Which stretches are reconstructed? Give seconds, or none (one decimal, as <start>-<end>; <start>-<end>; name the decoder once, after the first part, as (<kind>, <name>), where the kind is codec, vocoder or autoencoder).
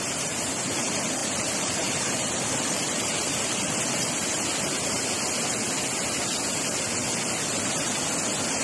1.2-4.1 (vocoder, BigVGAN v2)